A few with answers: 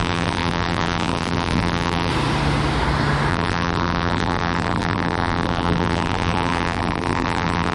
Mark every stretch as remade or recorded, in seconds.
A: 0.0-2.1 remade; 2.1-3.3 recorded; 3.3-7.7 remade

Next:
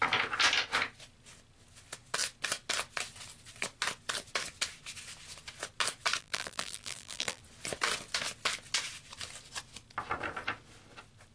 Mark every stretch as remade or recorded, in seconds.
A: 0.0-6.2 recorded; 6.2-7.4 remade; 7.4-11.3 recorded

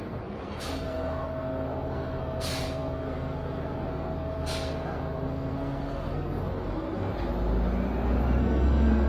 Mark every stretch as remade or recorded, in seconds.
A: 0.0-7.1 remade; 7.1-8.4 recorded; 8.4-9.1 remade

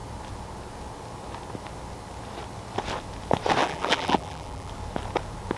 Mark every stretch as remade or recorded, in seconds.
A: 0.0-3.6 recorded; 3.6-4.7 remade; 4.7-5.6 recorded

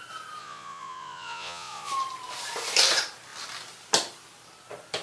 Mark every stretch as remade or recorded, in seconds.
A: 0.0-0.4 recorded; 0.4-1.9 remade; 1.9-5.0 recorded